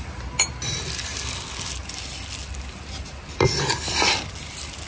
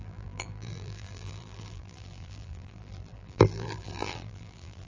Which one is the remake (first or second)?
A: second